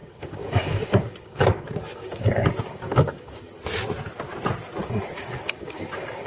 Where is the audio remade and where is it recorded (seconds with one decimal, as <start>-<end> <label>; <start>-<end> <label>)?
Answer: 0.0-3.5 remade; 3.5-4.8 recorded; 4.8-6.3 remade